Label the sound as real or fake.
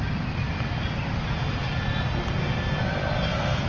real